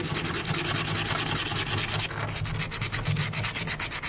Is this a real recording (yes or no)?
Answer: yes